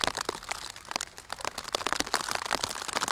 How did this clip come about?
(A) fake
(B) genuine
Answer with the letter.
B